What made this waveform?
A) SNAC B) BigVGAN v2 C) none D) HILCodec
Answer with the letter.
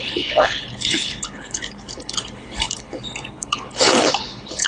D